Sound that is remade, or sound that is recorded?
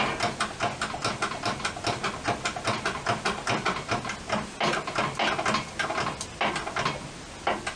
recorded